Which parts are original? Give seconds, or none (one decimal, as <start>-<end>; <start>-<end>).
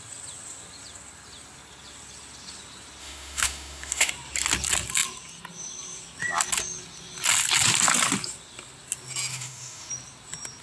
0.0-3.0; 4.1-9.3; 9.9-10.6